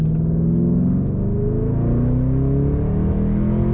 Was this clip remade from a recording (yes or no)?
no